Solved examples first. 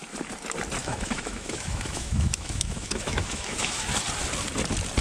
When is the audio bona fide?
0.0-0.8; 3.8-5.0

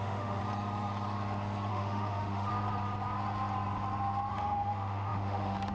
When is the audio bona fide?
0.4-1.7; 2.5-4.3

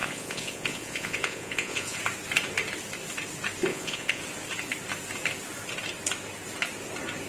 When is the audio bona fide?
2.0-3.7; 4.2-7.3

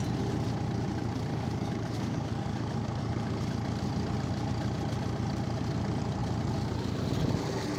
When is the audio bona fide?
0.0-1.3; 3.4-7.8

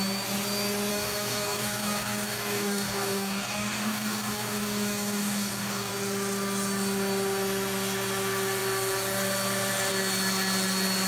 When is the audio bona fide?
0.0-0.9; 5.9-11.1

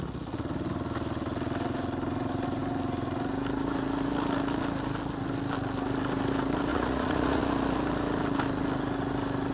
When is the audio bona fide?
0.0-6.7; 7.4-9.5

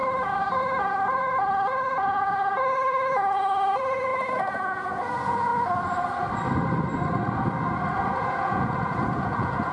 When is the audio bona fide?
0.0-0.6; 5.5-8.2

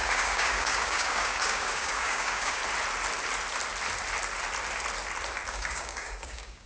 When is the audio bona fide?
2.6-5.5